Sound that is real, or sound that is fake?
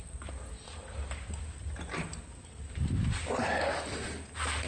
real